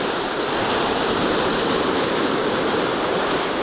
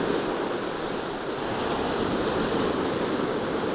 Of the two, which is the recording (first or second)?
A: second